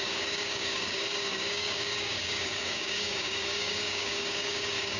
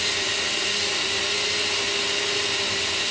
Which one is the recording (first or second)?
second